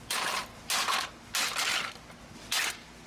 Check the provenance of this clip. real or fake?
real